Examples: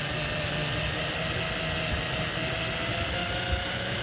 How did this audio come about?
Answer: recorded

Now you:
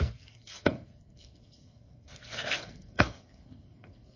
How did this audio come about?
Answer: remade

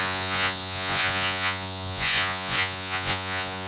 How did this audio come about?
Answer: remade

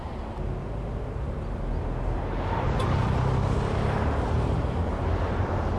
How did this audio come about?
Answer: recorded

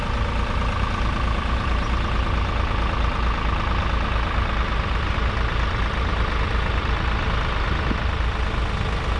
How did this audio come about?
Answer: recorded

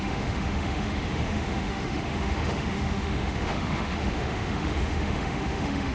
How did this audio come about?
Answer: remade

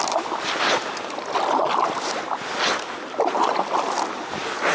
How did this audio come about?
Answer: recorded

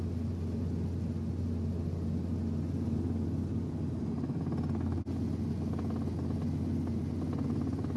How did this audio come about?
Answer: recorded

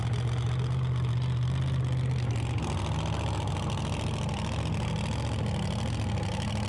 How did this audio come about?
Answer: recorded